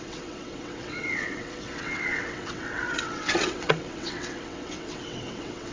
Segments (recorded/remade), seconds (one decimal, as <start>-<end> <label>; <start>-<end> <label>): 0.0-5.7 remade